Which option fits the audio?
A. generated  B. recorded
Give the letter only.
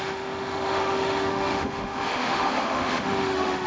A